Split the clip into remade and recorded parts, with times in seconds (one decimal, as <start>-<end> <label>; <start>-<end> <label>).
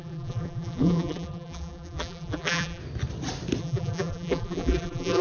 0.0-2.8 remade; 2.8-3.6 recorded; 3.6-5.2 remade